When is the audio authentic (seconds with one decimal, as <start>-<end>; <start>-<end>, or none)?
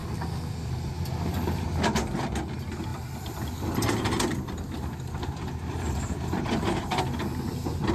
0.9-2.9